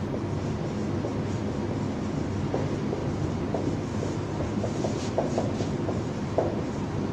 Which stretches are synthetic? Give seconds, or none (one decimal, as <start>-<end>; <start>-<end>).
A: 3.0-7.1